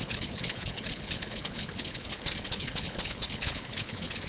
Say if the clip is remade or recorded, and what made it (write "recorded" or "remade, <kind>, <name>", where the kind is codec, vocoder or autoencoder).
remade, codec, HILCodec